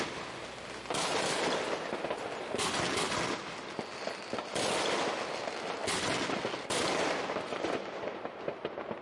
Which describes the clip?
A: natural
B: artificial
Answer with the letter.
A